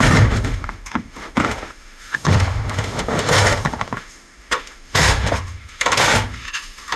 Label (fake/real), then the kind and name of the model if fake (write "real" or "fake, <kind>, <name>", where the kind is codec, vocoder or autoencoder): fake, autoencoder, DAC-VAE